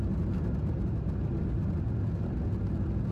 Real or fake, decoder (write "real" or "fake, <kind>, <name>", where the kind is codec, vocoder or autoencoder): real